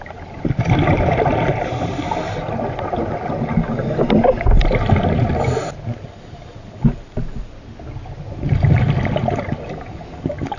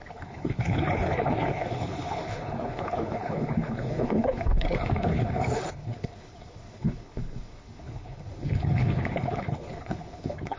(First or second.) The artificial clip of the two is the second